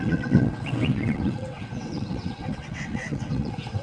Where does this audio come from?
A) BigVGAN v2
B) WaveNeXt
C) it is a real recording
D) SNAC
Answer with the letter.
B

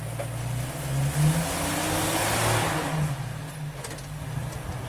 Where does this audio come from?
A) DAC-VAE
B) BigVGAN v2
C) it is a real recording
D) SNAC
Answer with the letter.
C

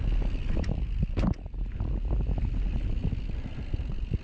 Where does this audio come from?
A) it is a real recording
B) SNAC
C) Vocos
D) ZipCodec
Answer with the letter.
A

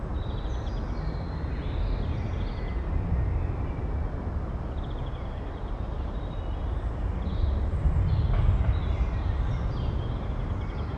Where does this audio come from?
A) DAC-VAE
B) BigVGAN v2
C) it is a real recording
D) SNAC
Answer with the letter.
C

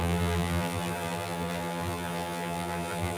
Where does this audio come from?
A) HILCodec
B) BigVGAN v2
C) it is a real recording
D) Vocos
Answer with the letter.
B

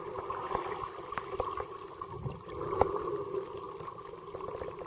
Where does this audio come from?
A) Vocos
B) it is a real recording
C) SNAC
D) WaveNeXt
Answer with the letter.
B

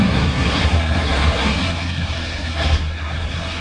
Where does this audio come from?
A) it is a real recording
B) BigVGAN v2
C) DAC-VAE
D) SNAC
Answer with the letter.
D